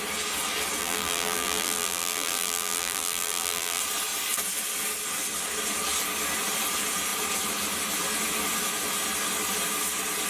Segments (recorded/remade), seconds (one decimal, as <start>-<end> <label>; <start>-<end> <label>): 0.0-0.8 recorded; 0.8-3.8 remade; 3.8-10.3 recorded